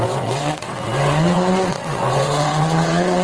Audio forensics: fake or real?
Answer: fake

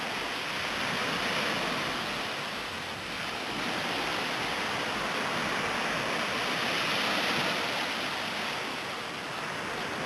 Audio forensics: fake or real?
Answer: real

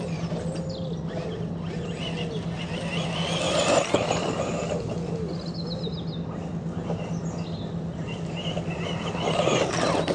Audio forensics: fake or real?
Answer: real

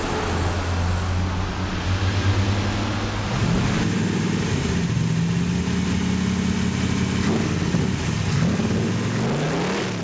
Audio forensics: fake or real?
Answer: real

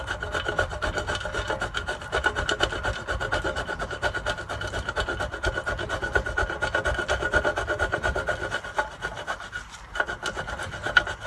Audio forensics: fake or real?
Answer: real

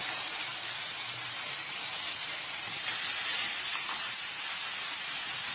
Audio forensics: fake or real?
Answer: fake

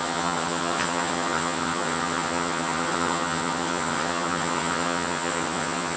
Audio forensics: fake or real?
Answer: fake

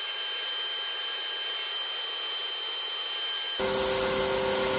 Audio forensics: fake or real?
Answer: real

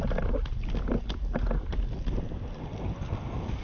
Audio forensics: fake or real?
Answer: real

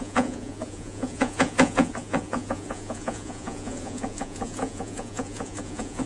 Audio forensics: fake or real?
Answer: fake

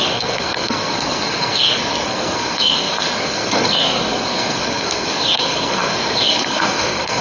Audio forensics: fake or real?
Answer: fake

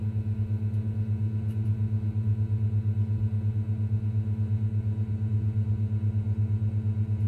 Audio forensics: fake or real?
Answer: real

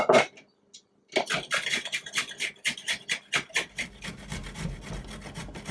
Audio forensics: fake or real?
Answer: real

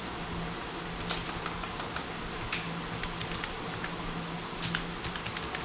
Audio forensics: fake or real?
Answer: real